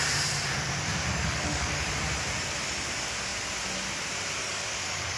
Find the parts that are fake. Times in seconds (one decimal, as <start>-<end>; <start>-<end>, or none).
1.1-1.9; 4.4-5.2